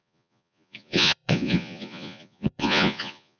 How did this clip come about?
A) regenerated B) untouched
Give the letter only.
A